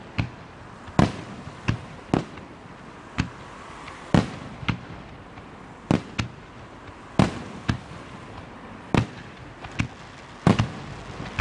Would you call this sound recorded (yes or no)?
yes